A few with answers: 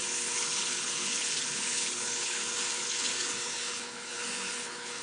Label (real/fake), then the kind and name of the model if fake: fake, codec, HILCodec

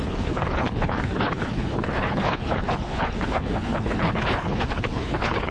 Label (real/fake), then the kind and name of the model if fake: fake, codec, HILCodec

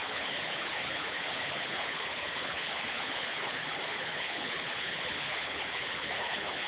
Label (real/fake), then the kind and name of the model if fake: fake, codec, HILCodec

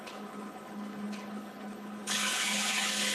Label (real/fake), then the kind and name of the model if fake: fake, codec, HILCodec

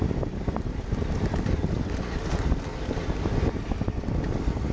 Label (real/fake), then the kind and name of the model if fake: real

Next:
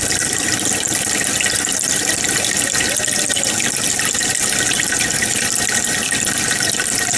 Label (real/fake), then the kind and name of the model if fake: real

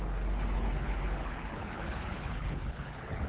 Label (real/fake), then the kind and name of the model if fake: fake, codec, HILCodec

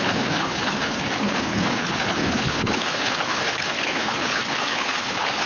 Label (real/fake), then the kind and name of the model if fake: fake, codec, HILCodec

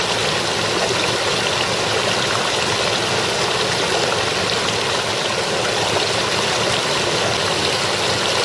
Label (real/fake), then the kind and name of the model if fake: real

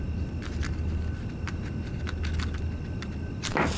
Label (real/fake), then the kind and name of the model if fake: real